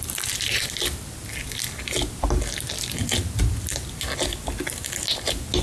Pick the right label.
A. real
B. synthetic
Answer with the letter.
A